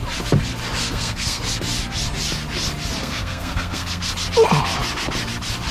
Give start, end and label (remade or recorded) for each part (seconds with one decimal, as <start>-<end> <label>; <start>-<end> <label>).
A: 0.0-0.8 recorded; 0.8-1.4 remade; 1.4-3.0 recorded; 3.0-4.1 remade; 4.1-5.7 recorded